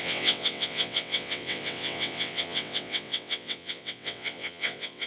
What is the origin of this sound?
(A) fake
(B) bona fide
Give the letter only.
A